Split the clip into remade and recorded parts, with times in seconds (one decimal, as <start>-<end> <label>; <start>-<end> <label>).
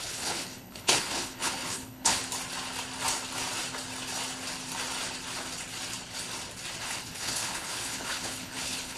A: 0.0-2.2 remade; 2.2-6.8 recorded; 6.8-9.0 remade